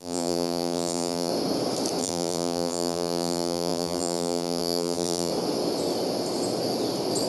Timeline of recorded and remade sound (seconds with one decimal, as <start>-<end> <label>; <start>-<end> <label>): 0.0-1.3 remade; 1.3-2.0 recorded; 2.0-5.3 remade; 5.3-7.3 recorded